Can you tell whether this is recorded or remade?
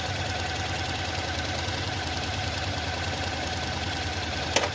recorded